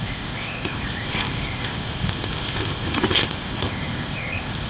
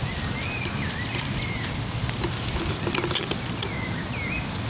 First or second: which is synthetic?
first